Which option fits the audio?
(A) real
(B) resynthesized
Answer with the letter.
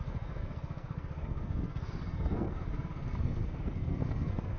B